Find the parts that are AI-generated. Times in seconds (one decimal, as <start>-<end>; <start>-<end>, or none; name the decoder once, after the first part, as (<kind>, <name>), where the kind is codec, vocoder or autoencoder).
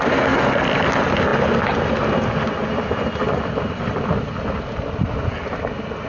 none